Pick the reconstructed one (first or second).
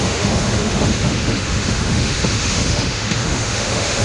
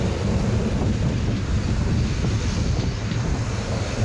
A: first